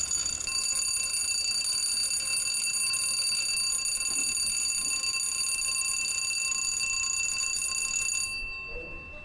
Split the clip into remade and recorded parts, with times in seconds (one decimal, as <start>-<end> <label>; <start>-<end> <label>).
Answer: 0.0-9.2 recorded